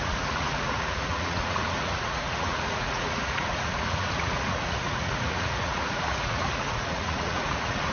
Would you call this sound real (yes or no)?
no